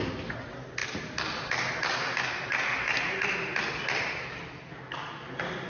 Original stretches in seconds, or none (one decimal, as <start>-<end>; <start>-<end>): 0.0-5.7